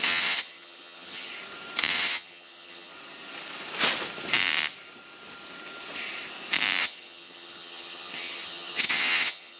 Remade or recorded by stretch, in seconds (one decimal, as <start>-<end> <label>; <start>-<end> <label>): 0.0-1.3 remade; 1.3-1.9 recorded; 1.9-2.9 remade; 2.9-6.8 recorded; 6.8-9.6 remade